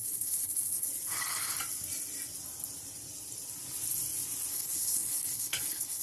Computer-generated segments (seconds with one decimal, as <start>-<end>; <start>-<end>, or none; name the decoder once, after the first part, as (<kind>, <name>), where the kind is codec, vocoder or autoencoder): 0.0-0.9 (codec, HILCodec); 4.5-6.0